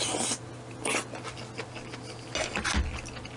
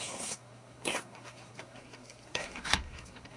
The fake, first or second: second